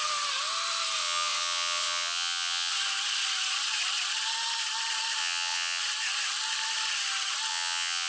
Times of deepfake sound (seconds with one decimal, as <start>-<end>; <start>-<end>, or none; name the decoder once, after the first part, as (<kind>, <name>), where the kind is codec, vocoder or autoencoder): 1.0-2.7 (vocoder, WaveNeXt); 5.2-5.8; 7.5-8.1